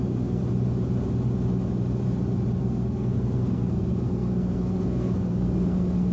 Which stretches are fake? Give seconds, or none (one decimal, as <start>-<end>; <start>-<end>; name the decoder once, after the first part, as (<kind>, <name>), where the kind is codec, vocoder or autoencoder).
0.0-0.4 (codec, SNAC); 2.6-6.1